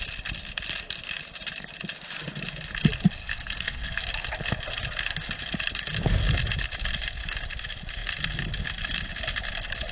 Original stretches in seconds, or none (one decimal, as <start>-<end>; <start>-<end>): 0.0-3.2; 4.0-9.9